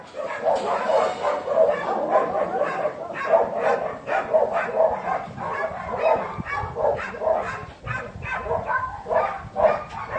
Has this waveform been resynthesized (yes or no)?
no